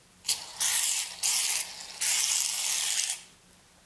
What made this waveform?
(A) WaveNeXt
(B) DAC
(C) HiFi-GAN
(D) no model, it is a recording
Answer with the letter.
D